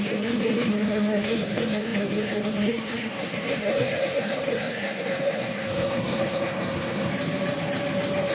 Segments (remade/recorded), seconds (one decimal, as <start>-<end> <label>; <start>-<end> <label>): 0.0-7.1 remade; 7.1-8.3 recorded